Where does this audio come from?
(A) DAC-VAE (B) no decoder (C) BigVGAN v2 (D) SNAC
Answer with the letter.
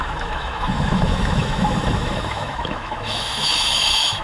A